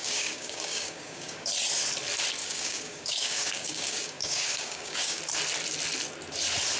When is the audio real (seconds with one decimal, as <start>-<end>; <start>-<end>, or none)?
1.5-2.4; 5.2-6.8